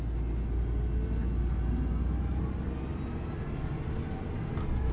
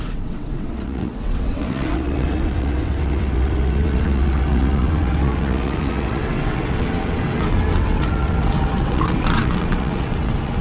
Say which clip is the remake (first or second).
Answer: second